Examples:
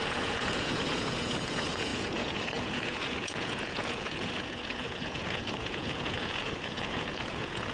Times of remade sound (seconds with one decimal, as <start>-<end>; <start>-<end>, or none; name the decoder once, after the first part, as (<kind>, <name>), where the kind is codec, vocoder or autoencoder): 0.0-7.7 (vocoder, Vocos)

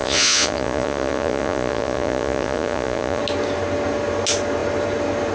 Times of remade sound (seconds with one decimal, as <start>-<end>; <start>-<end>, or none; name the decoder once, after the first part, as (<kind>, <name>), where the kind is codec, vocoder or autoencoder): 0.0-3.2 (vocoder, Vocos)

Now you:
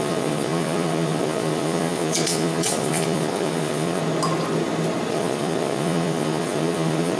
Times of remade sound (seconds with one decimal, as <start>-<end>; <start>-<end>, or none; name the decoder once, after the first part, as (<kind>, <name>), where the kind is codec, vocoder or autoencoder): 0.0-4.0 (vocoder, Vocos); 5.1-7.2

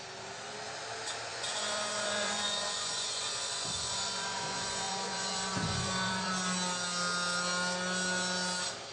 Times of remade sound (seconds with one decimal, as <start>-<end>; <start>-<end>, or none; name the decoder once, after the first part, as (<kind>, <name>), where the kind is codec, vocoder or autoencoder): 1.3-6.3 (vocoder, Vocos)

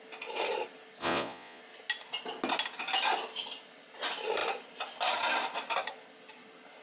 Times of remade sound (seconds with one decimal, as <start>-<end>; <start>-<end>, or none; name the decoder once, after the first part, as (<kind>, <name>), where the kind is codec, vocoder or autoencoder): 1.0-1.6 (vocoder, Vocos)

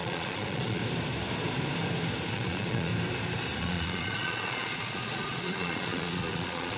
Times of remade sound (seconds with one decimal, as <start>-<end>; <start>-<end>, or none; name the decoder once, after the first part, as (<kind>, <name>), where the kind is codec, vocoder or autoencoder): 0.0-0.8 (vocoder, Vocos); 2.3-2.9; 3.6-6.8